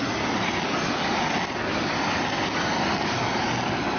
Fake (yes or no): no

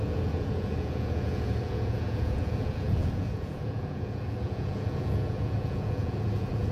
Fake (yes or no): yes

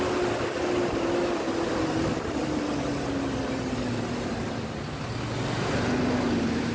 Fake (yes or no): no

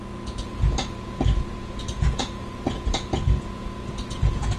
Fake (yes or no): yes